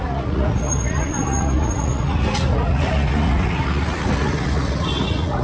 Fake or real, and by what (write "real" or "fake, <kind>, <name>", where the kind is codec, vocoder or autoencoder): fake, vocoder, Vocos